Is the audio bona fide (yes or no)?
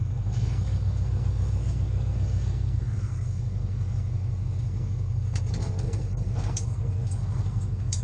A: no